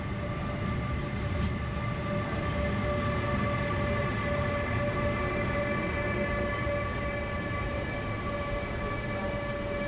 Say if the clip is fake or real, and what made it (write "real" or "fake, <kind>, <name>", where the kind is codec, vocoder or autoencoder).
real